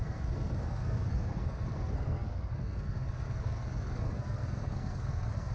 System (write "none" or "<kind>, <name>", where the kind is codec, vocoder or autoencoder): codec, SNAC